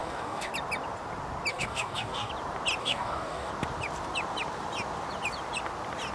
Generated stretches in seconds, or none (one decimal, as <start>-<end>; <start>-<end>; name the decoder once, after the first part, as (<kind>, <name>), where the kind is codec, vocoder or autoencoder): 0.0-0.5 (codec, DAC); 1.5-2.3; 2.8-3.5